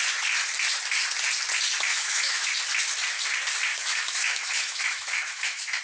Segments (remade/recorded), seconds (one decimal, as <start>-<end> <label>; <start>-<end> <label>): 0.0-1.9 recorded; 1.9-2.5 remade; 2.5-3.7 recorded; 3.7-5.8 remade